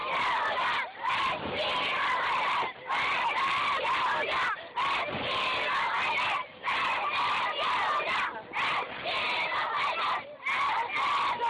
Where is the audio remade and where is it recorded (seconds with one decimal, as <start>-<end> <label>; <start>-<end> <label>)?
0.0-11.5 recorded